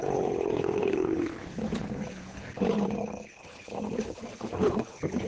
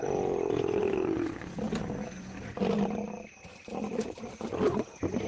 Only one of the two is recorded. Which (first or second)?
second